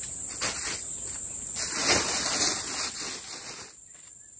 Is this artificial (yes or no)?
no